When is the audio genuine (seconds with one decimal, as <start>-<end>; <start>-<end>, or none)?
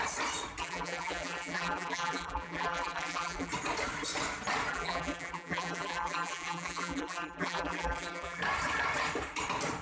0.0-0.6; 3.5-4.7; 8.4-9.8